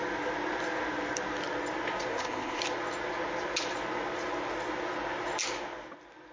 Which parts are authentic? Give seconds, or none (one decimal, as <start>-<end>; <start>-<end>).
0.0-2.1; 2.6-6.3